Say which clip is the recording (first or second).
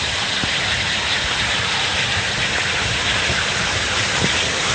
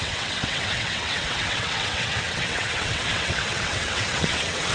first